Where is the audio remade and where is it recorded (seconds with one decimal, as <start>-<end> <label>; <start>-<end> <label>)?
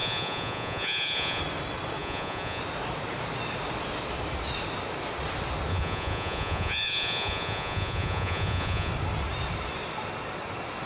0.0-1.4 remade; 1.4-2.0 recorded; 2.0-2.6 remade; 2.6-5.7 recorded; 5.7-8.9 remade; 8.9-10.9 recorded